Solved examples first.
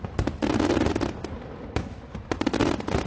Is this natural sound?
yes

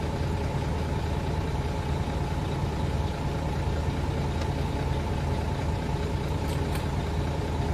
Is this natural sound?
yes